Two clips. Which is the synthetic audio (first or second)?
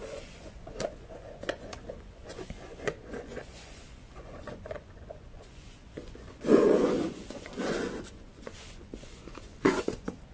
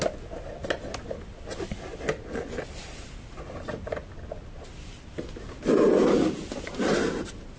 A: first